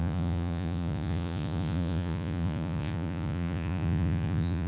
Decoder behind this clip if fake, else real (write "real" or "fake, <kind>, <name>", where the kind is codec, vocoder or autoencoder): fake, vocoder, Vocos